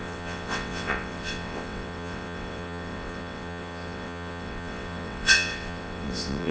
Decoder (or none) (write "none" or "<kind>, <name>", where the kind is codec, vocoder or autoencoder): vocoder, WaveNeXt